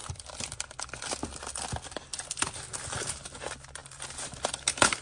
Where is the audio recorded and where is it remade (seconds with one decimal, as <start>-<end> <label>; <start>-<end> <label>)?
0.0-3.0 recorded; 3.0-5.0 remade